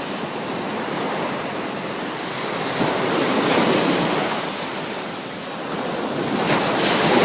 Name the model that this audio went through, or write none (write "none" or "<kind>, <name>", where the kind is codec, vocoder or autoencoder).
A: none